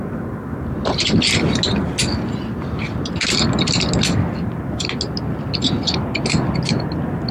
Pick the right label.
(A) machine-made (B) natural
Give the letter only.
B